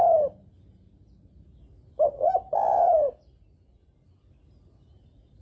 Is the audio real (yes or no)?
yes